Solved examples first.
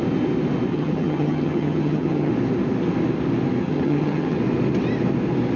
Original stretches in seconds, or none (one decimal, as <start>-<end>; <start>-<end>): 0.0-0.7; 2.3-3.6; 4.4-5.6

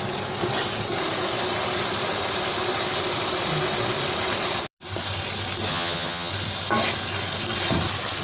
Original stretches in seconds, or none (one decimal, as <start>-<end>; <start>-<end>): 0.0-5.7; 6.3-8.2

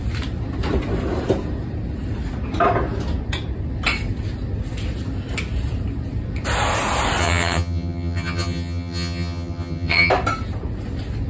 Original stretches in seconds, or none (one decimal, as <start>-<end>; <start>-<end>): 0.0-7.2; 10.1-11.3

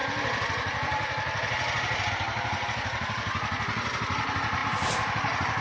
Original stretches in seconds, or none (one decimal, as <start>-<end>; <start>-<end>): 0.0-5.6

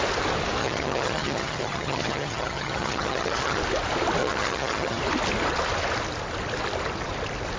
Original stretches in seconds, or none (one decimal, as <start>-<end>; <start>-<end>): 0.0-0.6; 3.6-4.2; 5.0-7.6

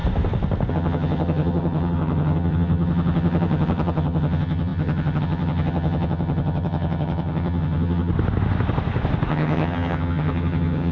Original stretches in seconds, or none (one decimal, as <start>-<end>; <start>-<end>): 0.0-0.7; 8.1-9.3